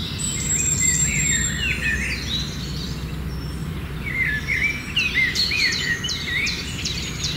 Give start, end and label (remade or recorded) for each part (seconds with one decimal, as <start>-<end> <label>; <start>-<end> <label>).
0.0-1.5 remade; 1.5-3.6 recorded; 3.6-5.9 remade; 5.9-7.4 recorded